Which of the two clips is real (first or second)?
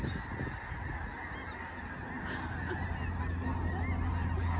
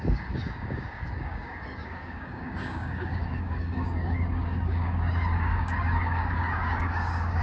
first